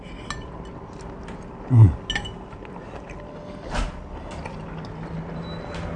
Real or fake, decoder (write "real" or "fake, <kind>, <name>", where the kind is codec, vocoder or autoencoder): real